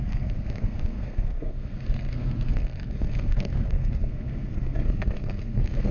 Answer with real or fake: fake